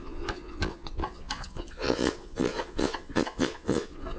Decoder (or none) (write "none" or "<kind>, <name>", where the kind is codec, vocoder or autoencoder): vocoder, Vocos